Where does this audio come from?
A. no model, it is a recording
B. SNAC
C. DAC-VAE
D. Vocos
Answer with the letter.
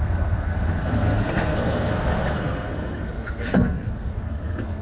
B